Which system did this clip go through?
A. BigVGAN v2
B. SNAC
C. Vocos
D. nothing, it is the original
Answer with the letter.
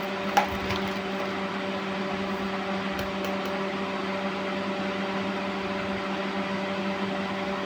D